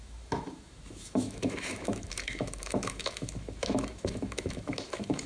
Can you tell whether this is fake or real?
fake